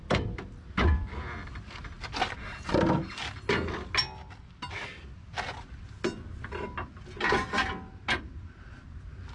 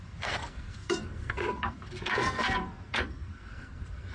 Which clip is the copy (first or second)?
second